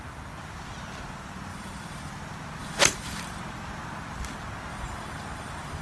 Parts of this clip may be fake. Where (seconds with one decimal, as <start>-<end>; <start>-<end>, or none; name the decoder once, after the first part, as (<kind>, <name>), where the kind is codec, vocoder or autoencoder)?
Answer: 1.5-2.1 (vocoder, BigVGAN v2); 2.6-3.4; 4.7-5.8